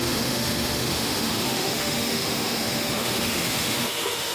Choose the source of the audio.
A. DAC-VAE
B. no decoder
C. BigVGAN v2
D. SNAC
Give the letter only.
A